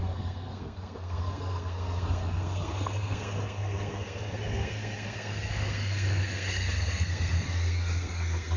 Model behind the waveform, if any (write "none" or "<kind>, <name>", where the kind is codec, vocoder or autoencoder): codec, SNAC